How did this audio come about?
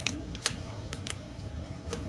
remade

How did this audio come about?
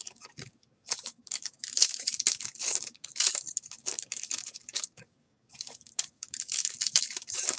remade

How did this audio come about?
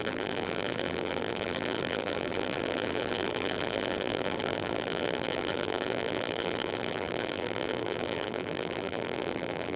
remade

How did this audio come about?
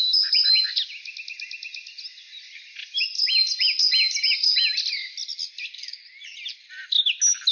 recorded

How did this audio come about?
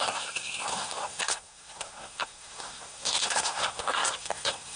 remade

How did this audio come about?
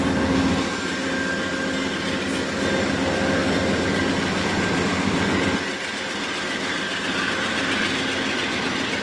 recorded